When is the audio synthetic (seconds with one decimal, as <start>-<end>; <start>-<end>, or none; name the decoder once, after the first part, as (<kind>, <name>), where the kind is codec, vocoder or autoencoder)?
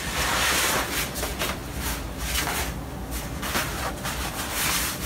0.0-1.6 (vocoder, BigVGAN v2); 3.9-5.1